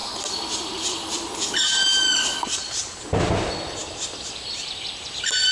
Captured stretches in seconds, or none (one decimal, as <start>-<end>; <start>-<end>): 0.0-5.5